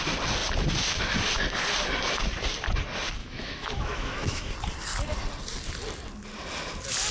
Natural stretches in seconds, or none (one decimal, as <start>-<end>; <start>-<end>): 0.0-3.2; 4.5-7.1